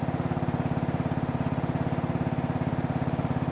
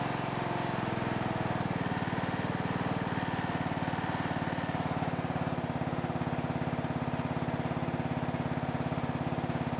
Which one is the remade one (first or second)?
first